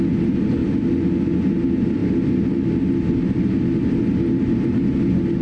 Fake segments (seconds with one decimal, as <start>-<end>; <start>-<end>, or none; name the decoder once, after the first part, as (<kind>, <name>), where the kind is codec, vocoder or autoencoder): none